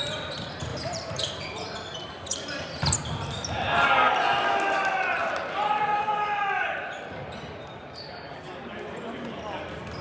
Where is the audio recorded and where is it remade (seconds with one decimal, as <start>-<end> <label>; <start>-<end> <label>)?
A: 0.0-0.7 recorded; 0.7-2.6 remade; 2.6-10.0 recorded